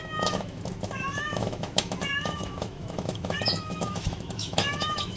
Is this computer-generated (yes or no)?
yes